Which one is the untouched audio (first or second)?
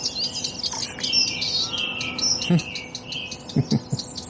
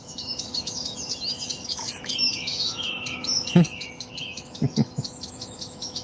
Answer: first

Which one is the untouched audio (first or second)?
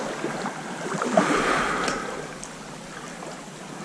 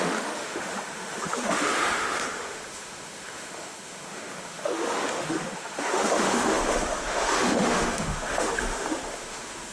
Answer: first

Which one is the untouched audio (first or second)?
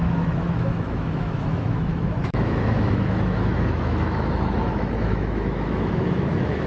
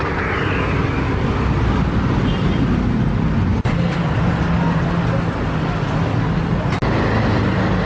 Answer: second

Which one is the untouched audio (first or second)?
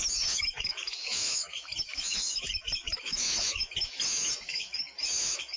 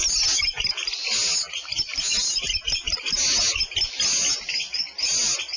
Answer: second